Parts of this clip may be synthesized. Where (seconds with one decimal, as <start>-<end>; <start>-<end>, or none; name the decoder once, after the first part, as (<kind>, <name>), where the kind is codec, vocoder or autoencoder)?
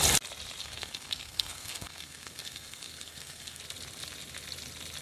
0.6-3.6 (codec, SNAC)